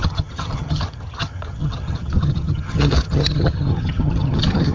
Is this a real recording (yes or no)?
no